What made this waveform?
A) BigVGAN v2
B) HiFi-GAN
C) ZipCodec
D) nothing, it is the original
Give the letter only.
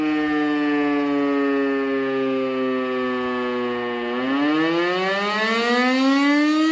D